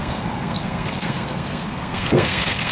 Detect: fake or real fake